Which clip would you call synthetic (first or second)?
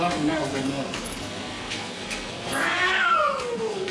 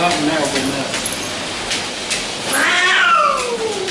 first